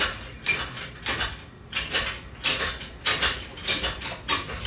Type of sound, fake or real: real